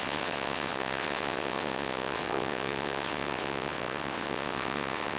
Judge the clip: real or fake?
fake